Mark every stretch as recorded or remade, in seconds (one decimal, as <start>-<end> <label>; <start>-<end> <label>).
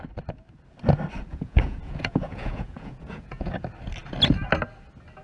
0.0-1.3 recorded; 1.3-3.5 remade; 3.5-5.2 recorded